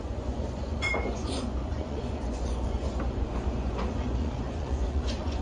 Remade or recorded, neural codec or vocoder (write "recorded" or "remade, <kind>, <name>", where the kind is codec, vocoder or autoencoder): remade, vocoder, Vocos